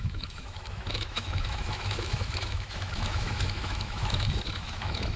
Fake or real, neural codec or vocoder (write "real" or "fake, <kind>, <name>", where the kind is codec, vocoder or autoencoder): fake, autoencoder, DAC-VAE